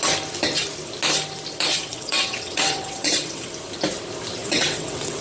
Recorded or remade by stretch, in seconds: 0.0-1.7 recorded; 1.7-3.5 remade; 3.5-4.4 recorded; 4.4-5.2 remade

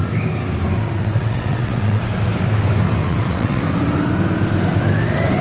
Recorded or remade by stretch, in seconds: 0.0-1.0 recorded; 1.0-2.0 remade; 2.0-3.0 recorded; 3.0-3.6 remade; 3.6-5.4 recorded

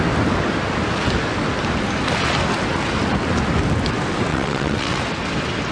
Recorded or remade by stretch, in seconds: 0.0-4.3 recorded; 4.3-5.0 remade; 5.0-5.7 recorded

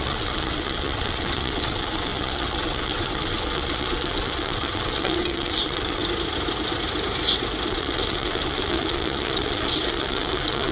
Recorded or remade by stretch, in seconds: 0.0-6.0 remade; 6.0-7.7 recorded; 7.7-10.7 remade

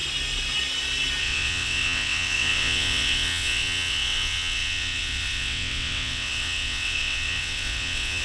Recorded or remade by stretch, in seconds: 0.0-1.2 recorded; 1.2-8.2 remade

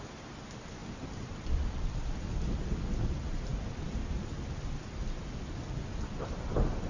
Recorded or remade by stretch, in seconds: 0.0-6.9 recorded

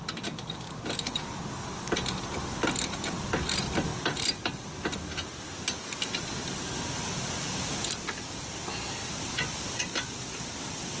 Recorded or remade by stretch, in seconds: 0.0-11.0 recorded

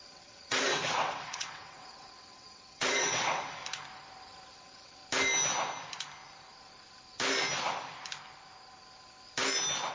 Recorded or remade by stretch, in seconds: 0.0-3.6 remade; 3.6-4.5 recorded; 4.5-5.0 remade; 5.0-9.9 recorded